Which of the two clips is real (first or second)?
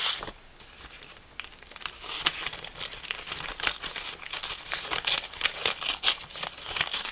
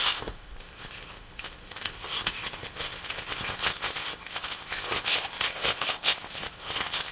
first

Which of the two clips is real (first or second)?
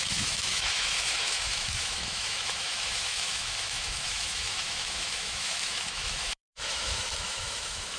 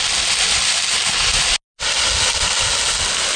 second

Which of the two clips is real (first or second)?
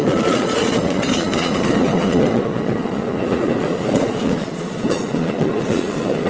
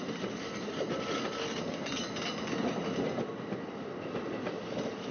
second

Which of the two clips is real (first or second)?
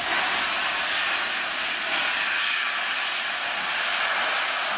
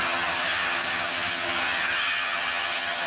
first